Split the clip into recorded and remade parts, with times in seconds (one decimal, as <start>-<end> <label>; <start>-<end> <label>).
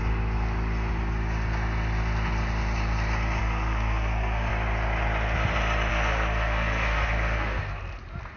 0.0-3.4 recorded; 3.4-4.5 remade; 4.5-5.9 recorded; 5.9-7.6 remade; 7.6-8.4 recorded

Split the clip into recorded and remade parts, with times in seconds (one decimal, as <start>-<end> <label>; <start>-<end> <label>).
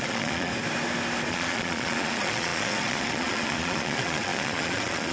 0.0-0.5 remade; 0.5-1.3 recorded; 1.3-5.1 remade